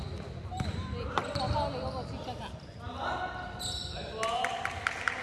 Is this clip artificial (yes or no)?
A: no